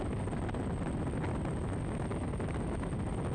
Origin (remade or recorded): recorded